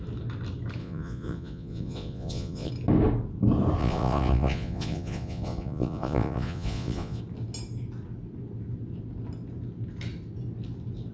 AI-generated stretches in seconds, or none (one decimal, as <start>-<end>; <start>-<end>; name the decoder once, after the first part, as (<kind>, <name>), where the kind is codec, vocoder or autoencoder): 0.8-2.7 (vocoder, Vocos); 3.8-7.2